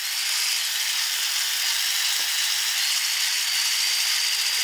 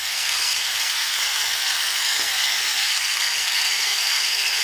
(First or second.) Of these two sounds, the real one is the first